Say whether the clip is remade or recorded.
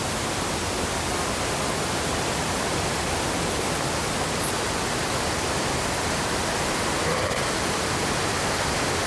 recorded